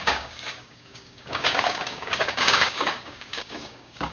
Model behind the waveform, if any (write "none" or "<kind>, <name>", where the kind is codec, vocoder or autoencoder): codec, DAC